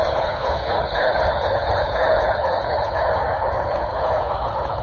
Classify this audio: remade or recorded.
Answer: remade